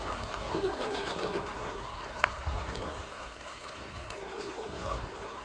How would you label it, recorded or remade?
remade